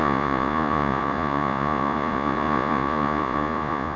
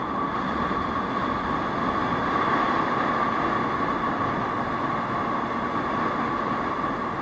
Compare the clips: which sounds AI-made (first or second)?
first